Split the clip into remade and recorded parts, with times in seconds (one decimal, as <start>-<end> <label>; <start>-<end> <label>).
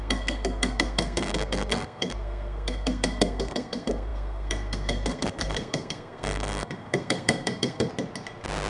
0.0-7.9 remade; 7.9-8.7 recorded